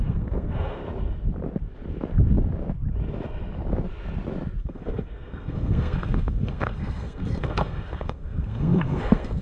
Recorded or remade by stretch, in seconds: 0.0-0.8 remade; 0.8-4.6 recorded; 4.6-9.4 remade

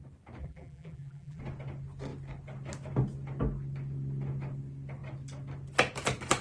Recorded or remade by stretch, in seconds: 0.0-0.4 recorded; 0.4-1.4 remade; 1.4-6.4 recorded